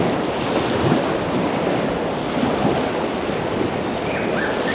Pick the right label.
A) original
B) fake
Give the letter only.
A